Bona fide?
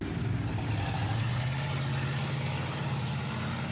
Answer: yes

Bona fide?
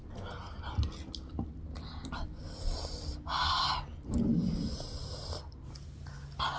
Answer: yes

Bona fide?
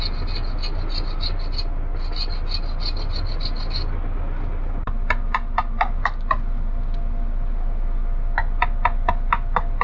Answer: yes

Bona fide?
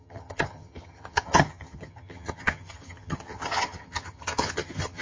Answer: no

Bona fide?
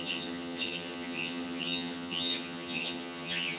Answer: no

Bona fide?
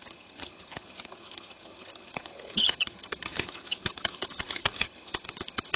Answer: no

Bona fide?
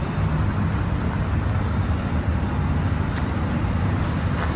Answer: yes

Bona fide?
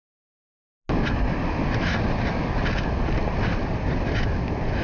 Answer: yes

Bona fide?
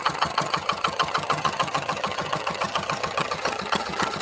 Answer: no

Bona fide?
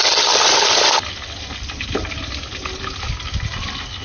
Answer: yes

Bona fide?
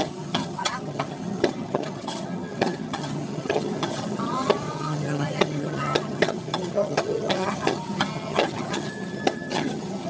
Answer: no